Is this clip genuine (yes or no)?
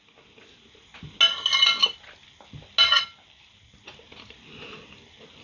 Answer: yes